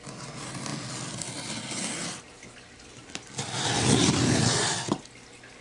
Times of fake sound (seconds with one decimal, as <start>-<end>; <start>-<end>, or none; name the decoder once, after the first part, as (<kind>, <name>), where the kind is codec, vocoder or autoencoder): none